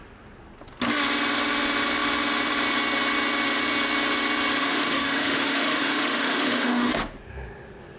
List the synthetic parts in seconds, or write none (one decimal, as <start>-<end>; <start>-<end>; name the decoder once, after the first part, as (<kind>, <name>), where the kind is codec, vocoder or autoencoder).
4.6-6.9 (autoencoder, DAC-VAE)

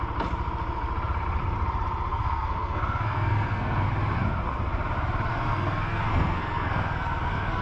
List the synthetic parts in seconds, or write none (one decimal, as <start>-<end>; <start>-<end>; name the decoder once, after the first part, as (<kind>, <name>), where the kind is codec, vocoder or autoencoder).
2.1-3.9 (codec, SNAC); 5.3-7.6

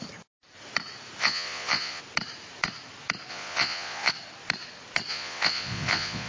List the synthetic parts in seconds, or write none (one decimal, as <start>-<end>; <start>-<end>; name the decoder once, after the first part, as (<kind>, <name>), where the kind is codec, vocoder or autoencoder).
1.2-2.0 (vocoder, Vocos); 3.3-4.1; 5.1-6.3

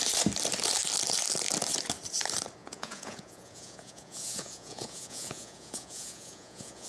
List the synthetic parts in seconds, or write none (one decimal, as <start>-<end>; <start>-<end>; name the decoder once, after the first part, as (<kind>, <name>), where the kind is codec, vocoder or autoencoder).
2.6-6.9 (vocoder, Vocos)